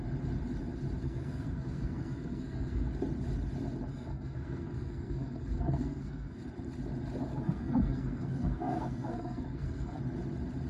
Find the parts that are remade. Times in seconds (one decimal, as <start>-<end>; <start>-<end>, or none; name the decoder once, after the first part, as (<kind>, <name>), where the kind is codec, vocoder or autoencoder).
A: 1.0-2.9 (codec, SNAC); 3.9-6.4; 7.3-10.0